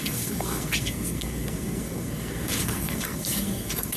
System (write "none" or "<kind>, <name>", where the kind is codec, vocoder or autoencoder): codec, SNAC